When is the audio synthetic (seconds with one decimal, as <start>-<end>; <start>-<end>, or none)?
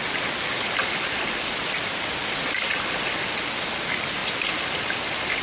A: none